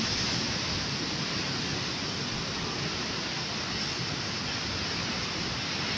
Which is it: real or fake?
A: real